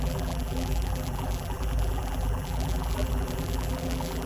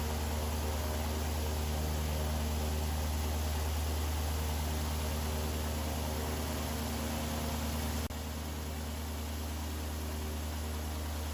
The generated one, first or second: first